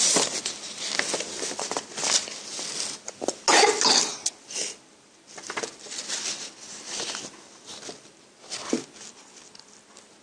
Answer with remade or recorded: recorded